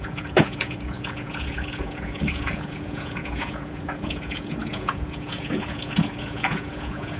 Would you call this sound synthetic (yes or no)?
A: yes